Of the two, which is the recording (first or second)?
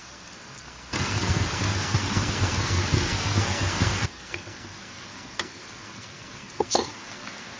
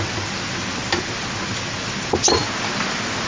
second